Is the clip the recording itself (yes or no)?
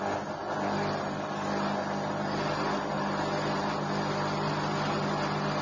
yes